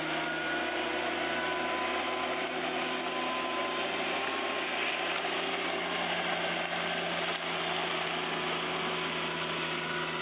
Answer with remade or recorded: recorded